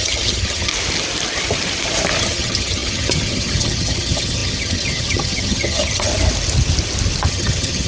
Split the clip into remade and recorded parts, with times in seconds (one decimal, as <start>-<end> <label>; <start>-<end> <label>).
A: 0.0-0.7 remade; 0.7-2.2 recorded; 2.2-6.1 remade; 6.1-7.3 recorded; 7.3-7.9 remade